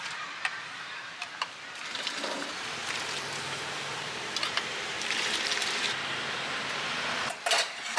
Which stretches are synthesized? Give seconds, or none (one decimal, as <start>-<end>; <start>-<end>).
0.0-2.8; 3.4-5.5